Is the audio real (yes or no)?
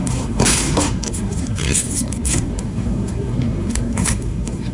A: no